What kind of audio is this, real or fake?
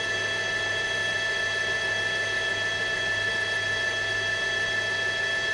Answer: fake